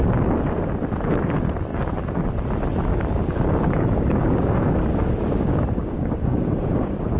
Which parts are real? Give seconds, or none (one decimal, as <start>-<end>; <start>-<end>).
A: 0.0-2.9